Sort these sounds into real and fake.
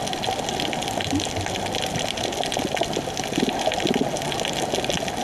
real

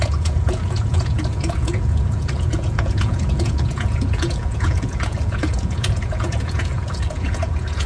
fake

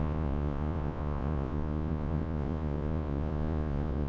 fake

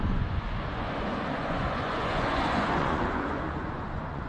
fake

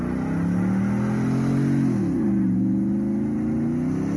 real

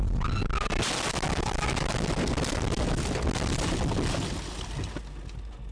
real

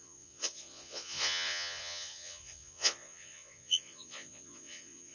fake